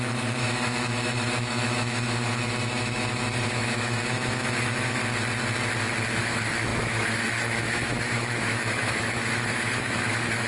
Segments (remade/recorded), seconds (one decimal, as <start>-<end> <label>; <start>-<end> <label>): 0.0-5.0 remade; 5.0-6.2 recorded; 6.2-10.5 remade